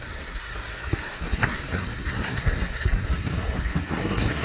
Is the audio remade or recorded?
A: remade